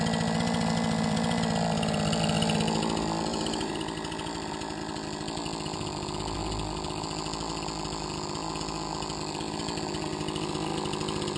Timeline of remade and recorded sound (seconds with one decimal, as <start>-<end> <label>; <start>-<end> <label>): 0.0-3.3 recorded; 3.3-3.8 remade; 3.8-11.4 recorded